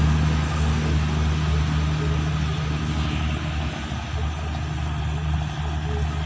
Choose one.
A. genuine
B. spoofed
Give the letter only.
A